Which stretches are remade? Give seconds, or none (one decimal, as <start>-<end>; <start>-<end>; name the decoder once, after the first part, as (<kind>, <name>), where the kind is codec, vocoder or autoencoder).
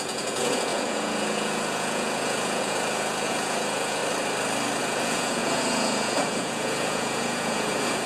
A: 0.0-4.0 (vocoder, Vocos); 4.8-8.1